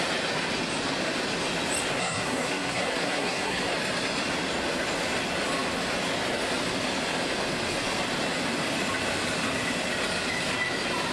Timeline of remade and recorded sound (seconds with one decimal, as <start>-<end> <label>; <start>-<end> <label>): 0.0-2.0 recorded; 2.0-3.6 remade; 3.6-11.1 recorded